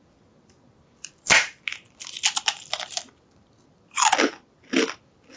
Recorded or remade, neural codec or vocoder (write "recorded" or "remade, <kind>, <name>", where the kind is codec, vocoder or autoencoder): recorded